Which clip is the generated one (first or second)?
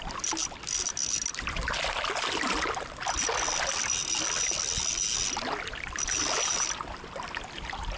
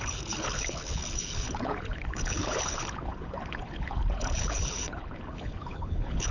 second